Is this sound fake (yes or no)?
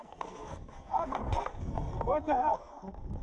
yes